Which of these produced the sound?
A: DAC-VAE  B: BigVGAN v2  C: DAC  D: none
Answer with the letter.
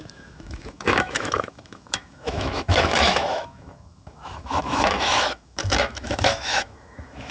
A